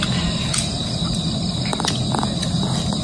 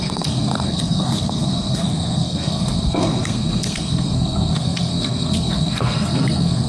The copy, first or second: second